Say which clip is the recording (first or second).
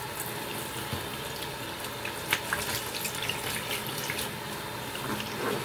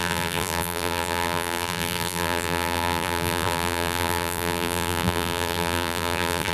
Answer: first